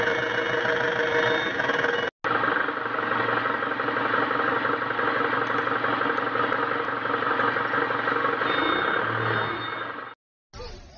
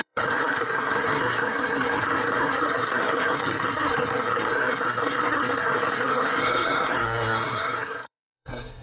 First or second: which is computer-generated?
second